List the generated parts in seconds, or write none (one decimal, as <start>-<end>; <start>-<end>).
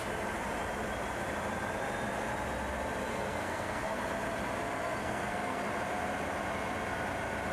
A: 3.1-4.0; 5.0-5.6